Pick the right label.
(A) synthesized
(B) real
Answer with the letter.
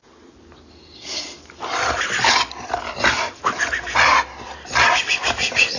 B